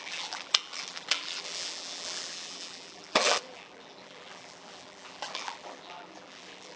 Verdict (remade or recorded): remade